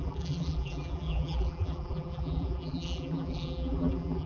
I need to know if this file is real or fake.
fake